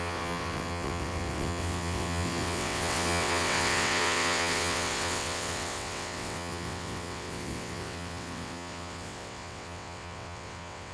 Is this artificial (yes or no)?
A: yes